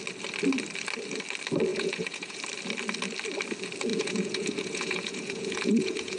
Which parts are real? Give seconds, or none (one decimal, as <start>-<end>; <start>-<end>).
0.0-1.7; 2.4-3.9